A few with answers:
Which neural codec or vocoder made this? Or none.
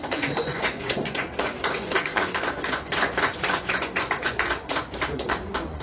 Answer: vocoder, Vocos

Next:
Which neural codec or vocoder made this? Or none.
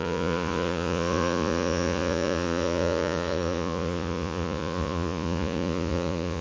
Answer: vocoder, Vocos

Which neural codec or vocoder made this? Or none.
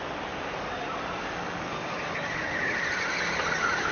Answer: none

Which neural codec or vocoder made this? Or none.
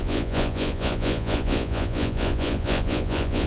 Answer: vocoder, Vocos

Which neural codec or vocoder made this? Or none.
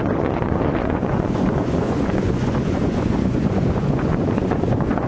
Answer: vocoder, Vocos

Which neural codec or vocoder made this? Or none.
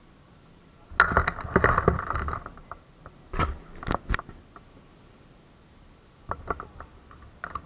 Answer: none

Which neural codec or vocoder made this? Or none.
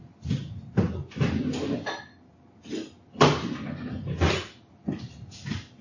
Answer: none